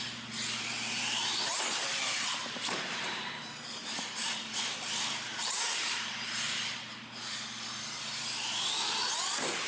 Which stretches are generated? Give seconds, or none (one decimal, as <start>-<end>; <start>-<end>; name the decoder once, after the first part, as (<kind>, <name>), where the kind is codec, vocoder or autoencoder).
2.4-3.3 (vocoder, BigVGAN v2); 5.4-6.1